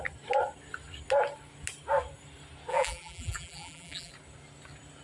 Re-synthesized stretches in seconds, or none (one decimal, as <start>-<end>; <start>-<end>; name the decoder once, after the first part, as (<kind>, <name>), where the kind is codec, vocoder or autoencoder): 2.7-4.1 (vocoder, BigVGAN v2)